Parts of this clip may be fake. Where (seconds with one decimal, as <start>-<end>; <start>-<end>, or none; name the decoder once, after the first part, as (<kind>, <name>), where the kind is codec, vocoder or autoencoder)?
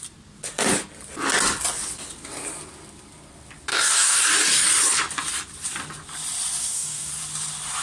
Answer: 3.7-4.2 (codec, DAC); 6.6-7.1